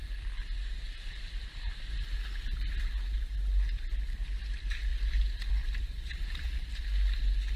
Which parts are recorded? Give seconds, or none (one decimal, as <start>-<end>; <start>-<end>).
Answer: 0.0-6.1; 6.8-7.6